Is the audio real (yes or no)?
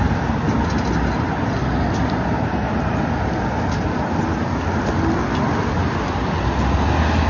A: yes